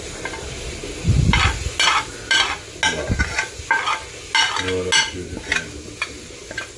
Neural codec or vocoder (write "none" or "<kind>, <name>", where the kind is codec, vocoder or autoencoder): none